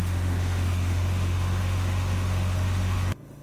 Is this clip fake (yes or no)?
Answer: yes